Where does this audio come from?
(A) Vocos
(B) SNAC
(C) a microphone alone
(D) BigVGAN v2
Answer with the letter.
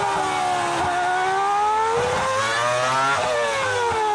C